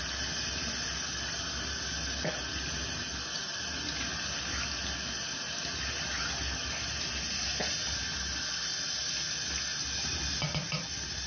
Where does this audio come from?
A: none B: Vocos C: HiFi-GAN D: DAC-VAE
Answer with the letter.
A